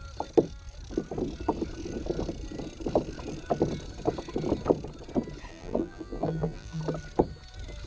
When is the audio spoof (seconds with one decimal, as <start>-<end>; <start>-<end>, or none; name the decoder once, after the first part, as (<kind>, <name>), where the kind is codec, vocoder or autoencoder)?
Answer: 5.5-6.8 (vocoder, BigVGAN v2)